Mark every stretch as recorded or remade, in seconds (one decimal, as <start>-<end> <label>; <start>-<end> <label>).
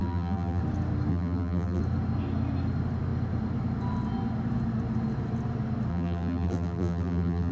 0.0-0.6 remade; 0.6-1.1 recorded; 1.1-1.8 remade; 1.8-5.9 recorded; 5.9-7.5 remade